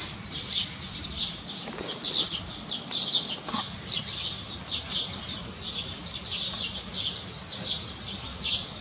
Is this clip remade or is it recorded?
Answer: recorded